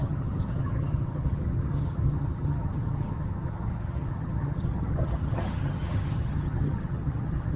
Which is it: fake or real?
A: fake